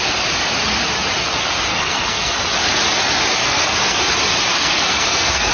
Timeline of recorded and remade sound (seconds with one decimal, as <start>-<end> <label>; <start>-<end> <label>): 0.0-1.7 recorded; 1.7-2.4 remade; 2.4-3.4 recorded; 3.4-4.0 remade; 4.0-4.5 recorded; 4.5-5.5 remade